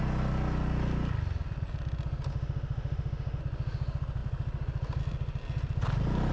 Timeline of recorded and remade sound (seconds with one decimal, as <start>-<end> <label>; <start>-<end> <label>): 0.0-2.3 recorded; 2.3-3.4 remade; 3.4-6.3 recorded